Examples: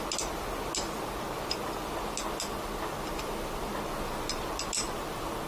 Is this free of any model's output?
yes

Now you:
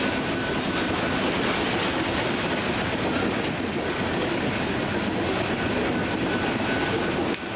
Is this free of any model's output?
yes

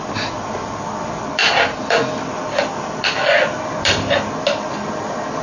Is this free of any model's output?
yes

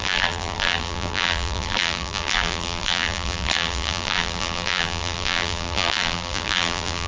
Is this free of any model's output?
no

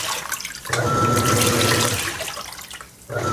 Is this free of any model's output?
no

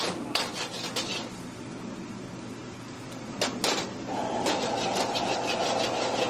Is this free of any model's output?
yes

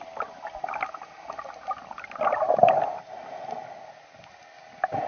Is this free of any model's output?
yes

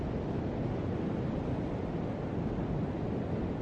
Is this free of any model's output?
yes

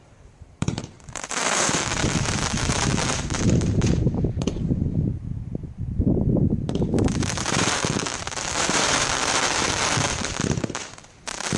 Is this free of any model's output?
no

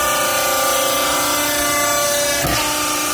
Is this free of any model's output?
yes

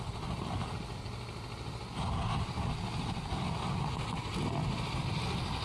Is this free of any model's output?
yes